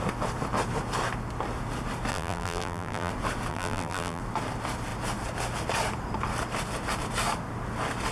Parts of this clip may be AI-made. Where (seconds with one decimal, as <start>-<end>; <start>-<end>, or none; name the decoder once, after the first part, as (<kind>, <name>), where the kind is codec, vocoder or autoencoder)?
2.1-3.1 (vocoder, BigVGAN v2); 3.5-4.2